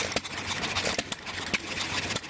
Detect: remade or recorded recorded